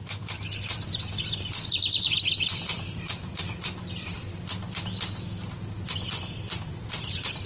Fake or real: fake